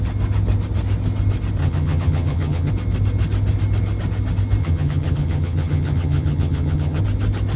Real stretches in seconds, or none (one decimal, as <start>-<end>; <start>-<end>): 0.0-1.6; 2.7-4.6; 7.0-7.6